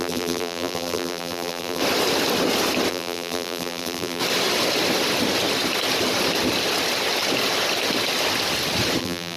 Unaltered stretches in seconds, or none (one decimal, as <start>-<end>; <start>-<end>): 1.8-2.9; 4.2-9.0